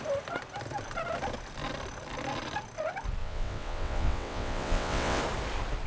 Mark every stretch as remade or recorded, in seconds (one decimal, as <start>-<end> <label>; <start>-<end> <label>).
0.0-3.2 recorded; 3.2-5.2 remade; 5.2-5.9 recorded